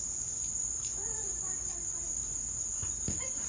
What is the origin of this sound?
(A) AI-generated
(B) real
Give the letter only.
A